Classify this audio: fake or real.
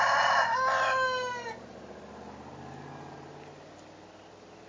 real